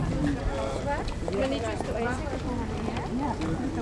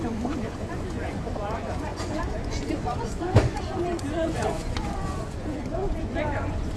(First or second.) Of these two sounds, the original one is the first